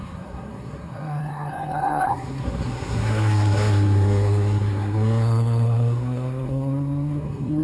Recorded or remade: remade